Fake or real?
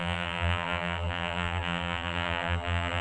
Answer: fake